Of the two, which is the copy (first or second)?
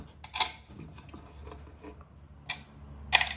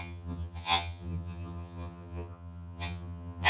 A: second